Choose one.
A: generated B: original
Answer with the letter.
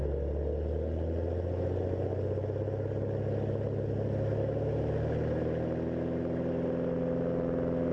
B